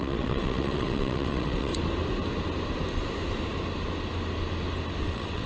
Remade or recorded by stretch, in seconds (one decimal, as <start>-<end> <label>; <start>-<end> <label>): 0.0-1.7 remade; 1.7-5.0 recorded; 5.0-5.5 remade